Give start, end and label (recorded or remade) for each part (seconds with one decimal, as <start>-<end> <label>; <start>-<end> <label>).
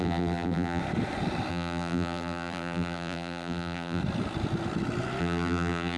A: 0.0-0.8 remade; 0.8-1.5 recorded; 1.5-4.0 remade; 4.0-5.2 recorded; 5.2-6.0 remade